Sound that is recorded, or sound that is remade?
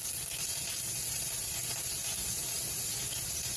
recorded